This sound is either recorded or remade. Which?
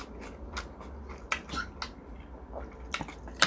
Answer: recorded